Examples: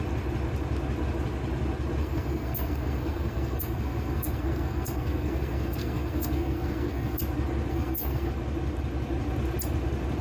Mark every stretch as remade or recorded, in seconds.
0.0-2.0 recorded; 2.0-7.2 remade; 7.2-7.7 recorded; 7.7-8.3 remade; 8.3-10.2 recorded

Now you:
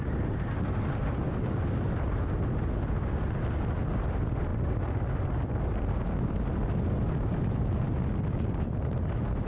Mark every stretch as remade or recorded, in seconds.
0.0-9.5 recorded

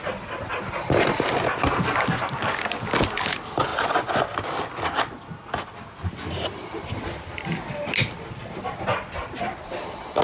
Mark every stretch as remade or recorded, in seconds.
0.0-10.2 recorded